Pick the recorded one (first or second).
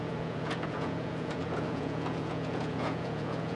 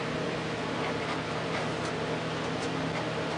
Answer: second